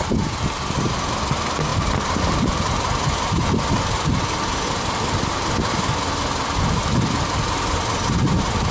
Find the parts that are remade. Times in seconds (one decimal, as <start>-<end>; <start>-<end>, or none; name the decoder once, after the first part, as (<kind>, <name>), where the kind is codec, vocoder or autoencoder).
none